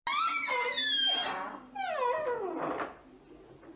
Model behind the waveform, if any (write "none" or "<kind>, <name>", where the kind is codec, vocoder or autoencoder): none